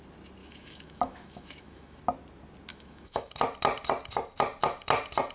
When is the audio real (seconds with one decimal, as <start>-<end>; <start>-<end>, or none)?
0.0-0.4; 2.0-2.7; 3.3-5.3